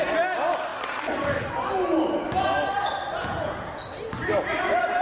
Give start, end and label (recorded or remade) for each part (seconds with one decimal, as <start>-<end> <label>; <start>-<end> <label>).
0.0-3.2 recorded; 3.2-3.8 remade; 3.8-5.0 recorded